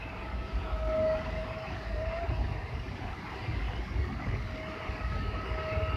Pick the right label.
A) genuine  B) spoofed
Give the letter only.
B